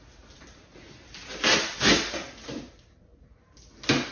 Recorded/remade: recorded